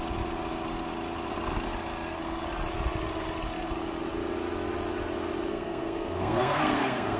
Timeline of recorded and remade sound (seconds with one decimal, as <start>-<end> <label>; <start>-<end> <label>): 0.0-5.5 recorded; 5.5-7.2 remade